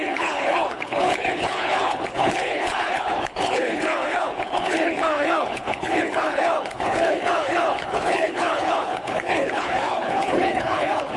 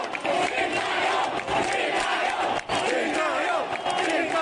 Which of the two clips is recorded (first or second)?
second